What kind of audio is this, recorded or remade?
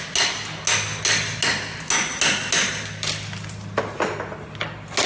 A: recorded